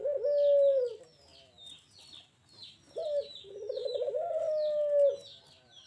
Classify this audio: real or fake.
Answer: real